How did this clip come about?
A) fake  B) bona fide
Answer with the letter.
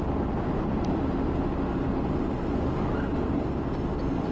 B